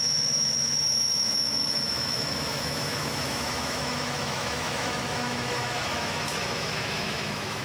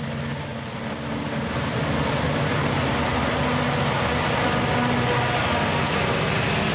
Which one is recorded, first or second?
second